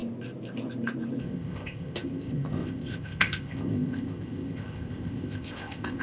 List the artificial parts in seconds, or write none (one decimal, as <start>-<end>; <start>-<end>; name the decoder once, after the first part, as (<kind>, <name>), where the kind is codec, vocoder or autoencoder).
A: 1.2-6.0 (codec, ZipCodec)